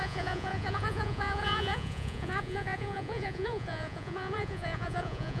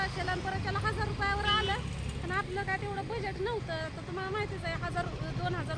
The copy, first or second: first